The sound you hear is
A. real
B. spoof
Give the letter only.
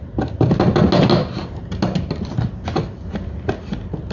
A